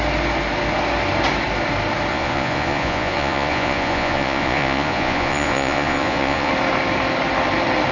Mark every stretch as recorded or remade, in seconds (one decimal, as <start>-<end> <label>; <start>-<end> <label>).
0.0-2.1 recorded; 2.1-6.5 remade; 6.5-7.9 recorded